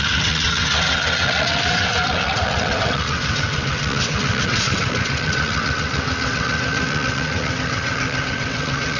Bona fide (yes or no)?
no